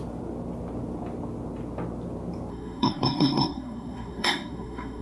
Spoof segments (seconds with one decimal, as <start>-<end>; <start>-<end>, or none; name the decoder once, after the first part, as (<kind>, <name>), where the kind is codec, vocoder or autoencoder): 2.5-5.0 (codec, SNAC)